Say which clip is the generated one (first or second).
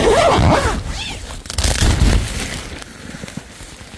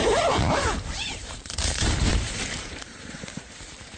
second